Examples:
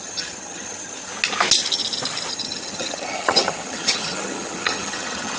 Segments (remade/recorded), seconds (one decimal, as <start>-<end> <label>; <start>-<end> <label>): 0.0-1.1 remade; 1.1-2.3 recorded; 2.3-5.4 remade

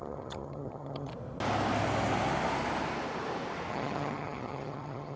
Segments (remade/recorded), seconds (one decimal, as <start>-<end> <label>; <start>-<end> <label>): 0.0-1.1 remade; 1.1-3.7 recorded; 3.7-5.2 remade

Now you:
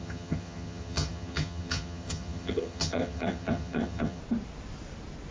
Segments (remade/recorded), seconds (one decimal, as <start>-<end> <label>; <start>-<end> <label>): 0.0-4.2 remade; 4.2-5.3 recorded

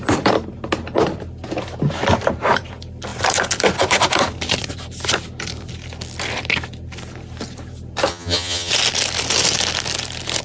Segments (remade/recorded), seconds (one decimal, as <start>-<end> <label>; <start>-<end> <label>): 0.0-8.1 recorded; 8.1-8.7 remade; 8.7-10.4 recorded